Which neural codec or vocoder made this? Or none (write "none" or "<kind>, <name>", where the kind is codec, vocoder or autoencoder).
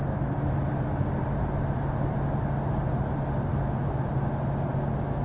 none